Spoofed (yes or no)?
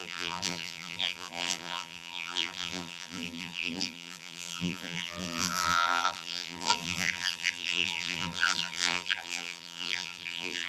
yes